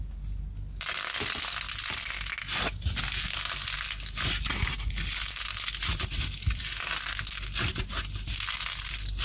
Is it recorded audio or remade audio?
recorded